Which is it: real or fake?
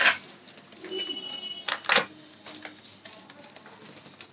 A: real